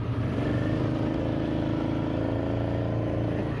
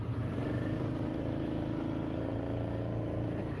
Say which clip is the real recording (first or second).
first